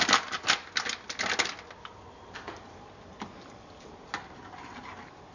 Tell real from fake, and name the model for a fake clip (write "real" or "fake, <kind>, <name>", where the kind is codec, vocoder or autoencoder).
real